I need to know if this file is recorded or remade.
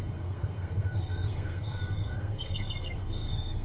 remade